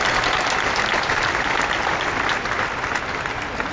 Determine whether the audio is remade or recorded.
recorded